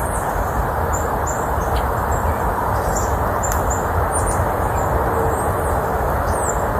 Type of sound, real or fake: real